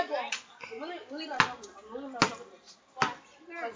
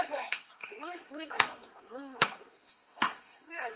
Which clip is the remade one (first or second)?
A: second